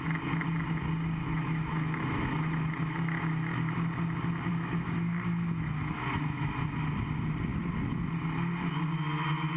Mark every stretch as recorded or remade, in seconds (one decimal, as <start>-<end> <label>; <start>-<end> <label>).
0.0-1.2 recorded; 1.2-3.7 remade; 3.7-4.5 recorded; 4.5-6.7 remade; 6.7-9.6 recorded